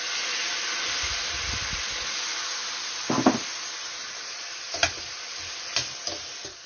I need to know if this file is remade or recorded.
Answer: recorded